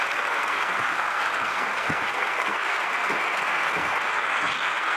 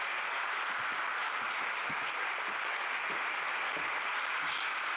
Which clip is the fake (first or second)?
first